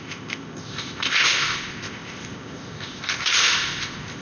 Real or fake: fake